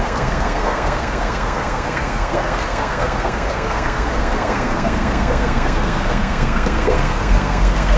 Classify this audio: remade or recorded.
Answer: remade